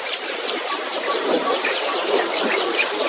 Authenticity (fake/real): fake